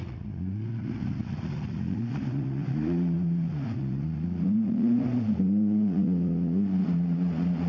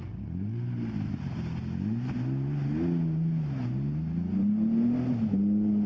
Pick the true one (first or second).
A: second